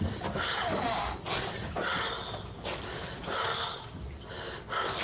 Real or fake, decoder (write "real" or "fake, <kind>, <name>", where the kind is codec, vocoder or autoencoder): real